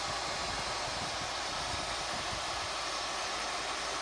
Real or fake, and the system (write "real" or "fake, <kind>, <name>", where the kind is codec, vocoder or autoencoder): real